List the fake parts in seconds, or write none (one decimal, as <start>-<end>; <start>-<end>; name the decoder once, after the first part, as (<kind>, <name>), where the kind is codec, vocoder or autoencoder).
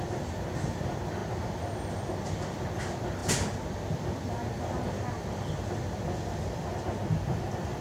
none